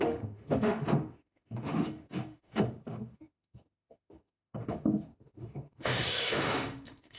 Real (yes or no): no